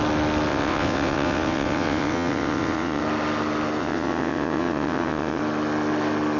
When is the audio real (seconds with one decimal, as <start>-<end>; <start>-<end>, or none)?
0.0-0.5; 3.0-3.8; 5.4-6.4